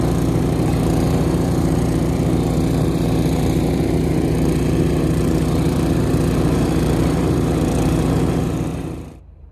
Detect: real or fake fake